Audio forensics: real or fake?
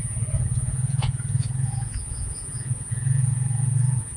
fake